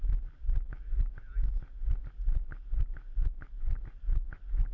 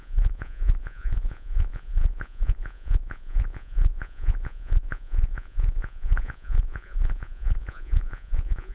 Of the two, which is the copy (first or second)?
second